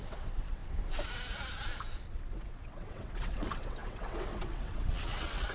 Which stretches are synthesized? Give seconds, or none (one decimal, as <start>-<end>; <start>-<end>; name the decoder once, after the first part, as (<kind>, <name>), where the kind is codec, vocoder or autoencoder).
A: 0.0-0.6 (vocoder, WaveNeXt); 2.5-5.5

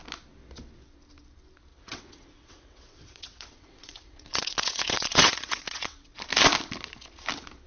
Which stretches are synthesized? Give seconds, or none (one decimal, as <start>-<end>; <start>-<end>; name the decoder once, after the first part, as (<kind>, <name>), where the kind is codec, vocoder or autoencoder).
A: 1.7-6.2 (vocoder, WaveNeXt)

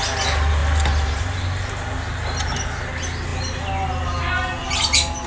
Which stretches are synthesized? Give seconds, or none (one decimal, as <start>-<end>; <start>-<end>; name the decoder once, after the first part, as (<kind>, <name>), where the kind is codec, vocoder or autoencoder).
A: none

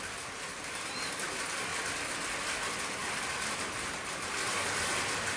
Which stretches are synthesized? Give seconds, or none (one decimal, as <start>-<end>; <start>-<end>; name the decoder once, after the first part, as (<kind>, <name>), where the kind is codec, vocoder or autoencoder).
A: none